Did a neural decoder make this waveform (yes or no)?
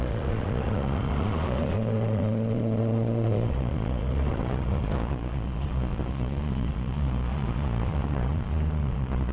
yes